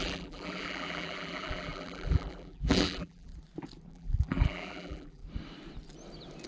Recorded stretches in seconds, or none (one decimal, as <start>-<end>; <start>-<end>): 3.3-3.9; 5.2-6.5